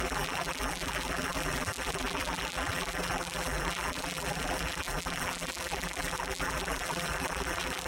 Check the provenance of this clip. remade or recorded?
remade